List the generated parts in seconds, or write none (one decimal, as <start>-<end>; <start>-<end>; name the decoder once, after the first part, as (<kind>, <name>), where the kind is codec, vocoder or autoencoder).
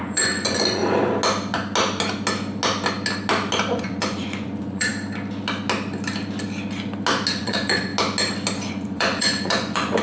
0.0-0.8 (vocoder, Vocos); 3.8-4.9; 7.4-7.9; 8.7-10.0